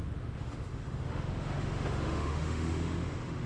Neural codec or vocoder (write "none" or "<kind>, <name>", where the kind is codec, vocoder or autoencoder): autoencoder, DAC-VAE